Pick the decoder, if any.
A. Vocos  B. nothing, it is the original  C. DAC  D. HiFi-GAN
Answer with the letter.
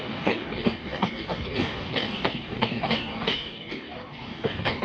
C